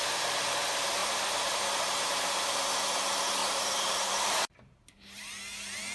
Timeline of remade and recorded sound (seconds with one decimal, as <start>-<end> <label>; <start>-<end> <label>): 0.0-1.0 recorded; 1.0-2.4 remade; 2.4-3.4 recorded; 3.4-5.2 remade; 5.2-5.9 recorded

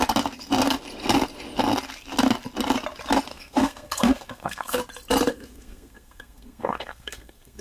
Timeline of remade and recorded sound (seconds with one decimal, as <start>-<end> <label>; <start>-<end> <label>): 0.0-3.3 recorded; 3.3-4.8 remade; 4.8-5.3 recorded; 5.3-7.6 remade

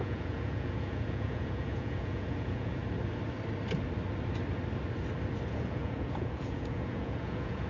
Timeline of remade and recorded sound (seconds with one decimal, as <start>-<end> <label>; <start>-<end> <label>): 0.0-2.8 remade; 2.8-5.5 recorded; 5.5-7.7 remade

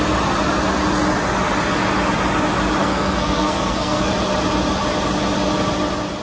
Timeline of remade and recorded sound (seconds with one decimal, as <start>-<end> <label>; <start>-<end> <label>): 0.0-2.8 recorded; 2.8-4.1 remade; 4.1-6.2 recorded

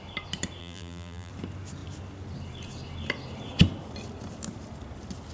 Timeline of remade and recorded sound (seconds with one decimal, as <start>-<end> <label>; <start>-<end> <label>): 0.0-0.6 recorded; 0.6-1.3 remade; 1.3-5.3 recorded

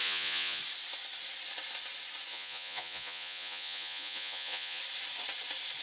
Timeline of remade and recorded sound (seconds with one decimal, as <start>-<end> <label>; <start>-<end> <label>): 0.0-0.6 remade; 0.6-2.3 recorded; 2.3-4.8 remade; 4.8-5.8 recorded

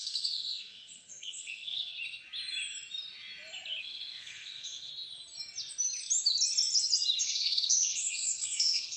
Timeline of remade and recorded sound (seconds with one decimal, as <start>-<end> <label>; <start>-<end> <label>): 0.0-1.9 remade; 1.9-3.8 recorded; 3.8-4.9 remade; 4.9-7.2 recorded; 7.2-9.0 remade

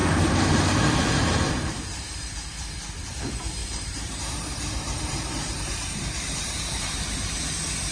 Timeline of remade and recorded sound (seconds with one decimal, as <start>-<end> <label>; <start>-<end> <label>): 0.0-2.4 remade; 2.4-3.6 recorded; 3.6-7.4 remade; 7.4-7.9 recorded